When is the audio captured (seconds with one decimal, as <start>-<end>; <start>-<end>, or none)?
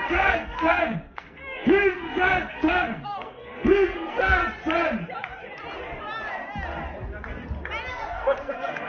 4.4-7.9